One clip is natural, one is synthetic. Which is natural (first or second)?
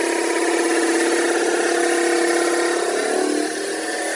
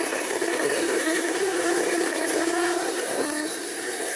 first